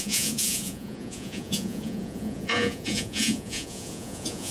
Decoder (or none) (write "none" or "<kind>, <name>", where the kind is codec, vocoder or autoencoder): vocoder, Vocos